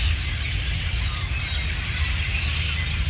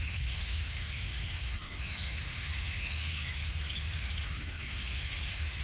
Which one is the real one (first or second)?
first